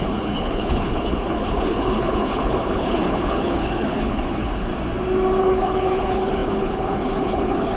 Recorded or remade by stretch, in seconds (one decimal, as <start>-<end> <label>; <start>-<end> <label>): 0.0-4.7 remade; 4.7-5.4 recorded; 5.4-7.8 remade